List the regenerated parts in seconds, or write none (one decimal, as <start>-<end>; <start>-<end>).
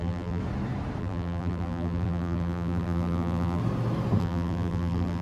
0.0-0.4; 1.0-3.6; 4.2-5.2